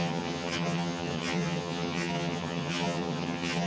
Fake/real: fake